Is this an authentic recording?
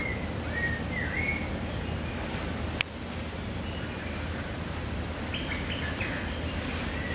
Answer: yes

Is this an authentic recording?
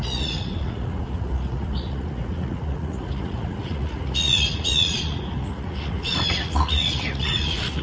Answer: no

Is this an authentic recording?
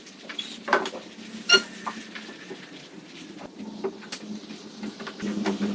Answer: yes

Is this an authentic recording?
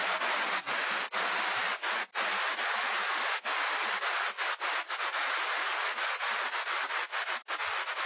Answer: yes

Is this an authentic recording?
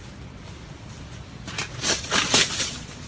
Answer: yes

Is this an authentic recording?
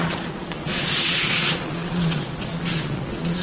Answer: no